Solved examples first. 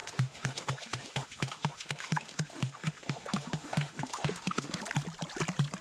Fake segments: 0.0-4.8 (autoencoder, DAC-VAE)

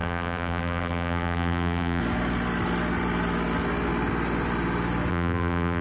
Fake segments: 0.0-2.0 (vocoder, BigVGAN v2); 5.1-5.8

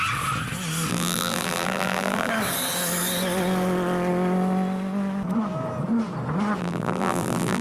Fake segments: 0.9-2.3 (vocoder, BigVGAN v2); 6.6-7.6

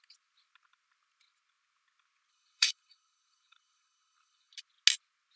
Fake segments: 2.3-4.5 (codec, HILCodec)

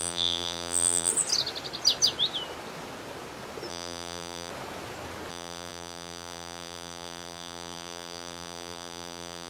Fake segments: 0.0-1.1 (vocoder, BigVGAN v2); 3.7-4.5; 5.3-9.5

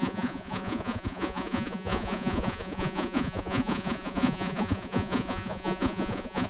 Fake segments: 0.0-6.5 (vocoder, Vocos)

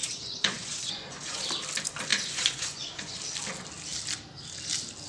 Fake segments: 0.0-1.4 (vocoder, Vocos); 2.1-3.2